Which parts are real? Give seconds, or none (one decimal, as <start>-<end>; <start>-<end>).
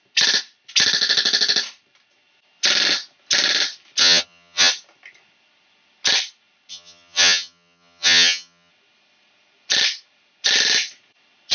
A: 0.0-4.0; 4.7-6.7; 8.7-11.5